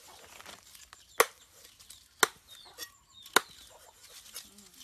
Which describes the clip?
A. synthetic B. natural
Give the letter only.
B